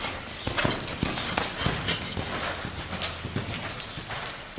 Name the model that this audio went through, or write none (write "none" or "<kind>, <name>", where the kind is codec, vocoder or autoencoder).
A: none